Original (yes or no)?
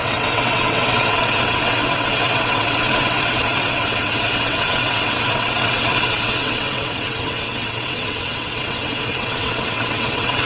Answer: no